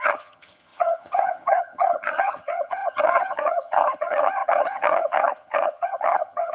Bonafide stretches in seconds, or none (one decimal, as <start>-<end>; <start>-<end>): none